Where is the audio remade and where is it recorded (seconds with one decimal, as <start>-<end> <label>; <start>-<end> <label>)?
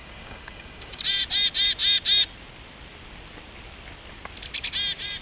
0.0-1.0 remade; 1.0-5.2 recorded